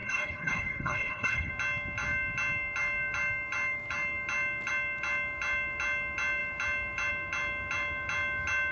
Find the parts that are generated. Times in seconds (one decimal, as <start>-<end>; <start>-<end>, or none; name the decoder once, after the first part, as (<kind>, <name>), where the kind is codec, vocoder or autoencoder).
0.0-1.5 (codec, HILCodec)